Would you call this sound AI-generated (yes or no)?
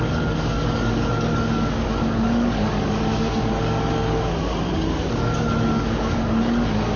yes